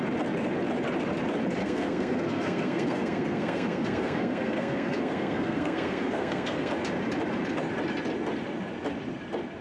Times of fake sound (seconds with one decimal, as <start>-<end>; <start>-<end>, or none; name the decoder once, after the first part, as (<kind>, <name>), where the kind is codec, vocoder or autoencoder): 1.6-6.7 (codec, SNAC)